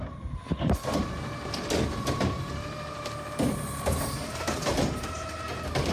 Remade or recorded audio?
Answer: recorded